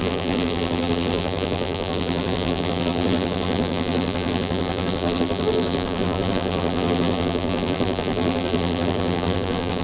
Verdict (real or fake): fake